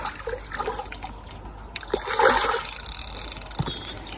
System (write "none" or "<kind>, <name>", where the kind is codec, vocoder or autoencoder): none